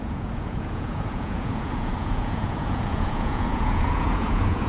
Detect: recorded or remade remade